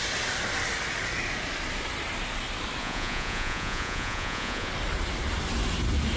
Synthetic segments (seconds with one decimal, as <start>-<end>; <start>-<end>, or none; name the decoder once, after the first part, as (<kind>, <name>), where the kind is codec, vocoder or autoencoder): 2.8-4.7 (vocoder, Vocos)